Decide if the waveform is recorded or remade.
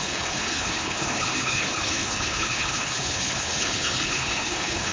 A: remade